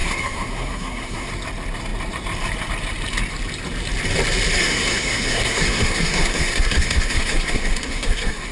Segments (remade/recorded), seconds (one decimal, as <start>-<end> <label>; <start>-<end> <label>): 0.0-1.3 remade; 1.3-4.6 recorded; 4.6-8.5 remade